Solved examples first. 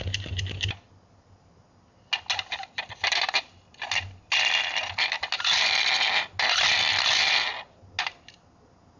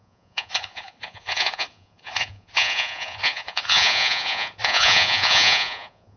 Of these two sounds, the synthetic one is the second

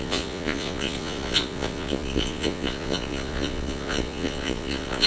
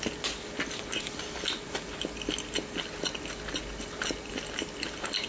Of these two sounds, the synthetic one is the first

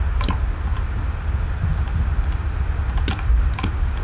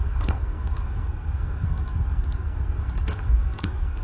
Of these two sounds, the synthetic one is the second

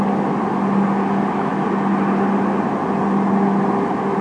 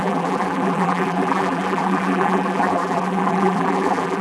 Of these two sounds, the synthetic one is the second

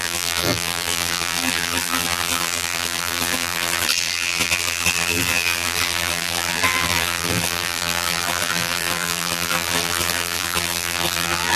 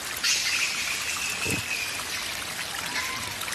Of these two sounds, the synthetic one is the first